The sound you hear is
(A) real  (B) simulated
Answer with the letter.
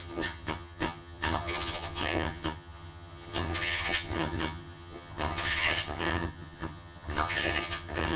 B